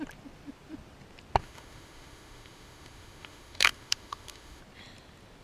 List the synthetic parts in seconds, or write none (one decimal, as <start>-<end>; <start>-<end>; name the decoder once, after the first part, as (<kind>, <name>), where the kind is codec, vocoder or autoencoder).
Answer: 1.4-4.6 (autoencoder, DAC-VAE)